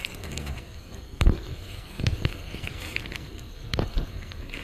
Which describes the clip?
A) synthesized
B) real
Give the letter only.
A